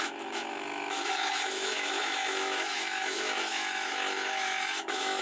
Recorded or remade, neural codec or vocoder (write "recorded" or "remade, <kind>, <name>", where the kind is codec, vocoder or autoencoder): remade, autoencoder, DAC-VAE